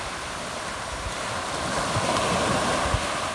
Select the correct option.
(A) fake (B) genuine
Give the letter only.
B